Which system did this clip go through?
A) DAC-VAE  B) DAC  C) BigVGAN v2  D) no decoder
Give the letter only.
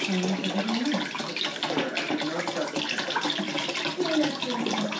D